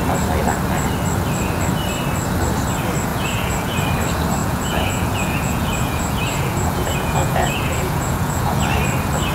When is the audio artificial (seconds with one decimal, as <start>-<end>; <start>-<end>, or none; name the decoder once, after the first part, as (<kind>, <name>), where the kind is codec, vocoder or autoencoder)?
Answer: 3.1-3.8 (vocoder, Vocos); 4.4-8.6